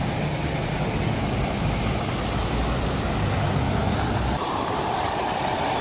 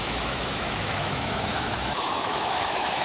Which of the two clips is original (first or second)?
first